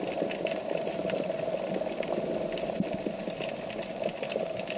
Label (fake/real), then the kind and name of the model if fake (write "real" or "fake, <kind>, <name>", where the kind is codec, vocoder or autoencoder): real